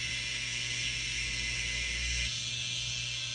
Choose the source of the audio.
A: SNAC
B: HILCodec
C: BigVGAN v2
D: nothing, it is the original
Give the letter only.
A